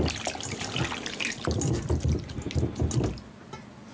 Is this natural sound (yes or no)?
yes